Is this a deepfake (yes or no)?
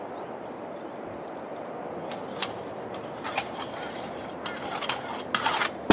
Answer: no